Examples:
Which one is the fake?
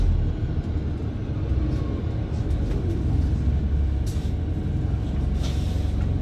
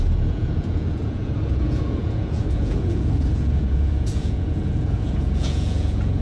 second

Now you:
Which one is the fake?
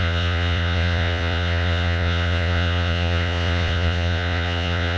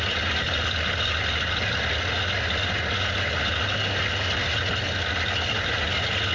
first